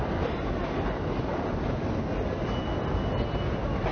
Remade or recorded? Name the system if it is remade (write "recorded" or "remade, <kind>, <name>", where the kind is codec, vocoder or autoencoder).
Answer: recorded